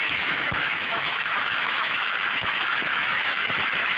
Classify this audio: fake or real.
fake